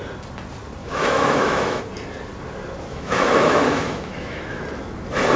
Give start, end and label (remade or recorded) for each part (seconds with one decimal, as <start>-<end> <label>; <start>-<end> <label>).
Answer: 0.0-0.8 recorded; 0.8-1.8 remade; 1.8-2.9 recorded; 2.9-4.6 remade; 4.6-5.4 recorded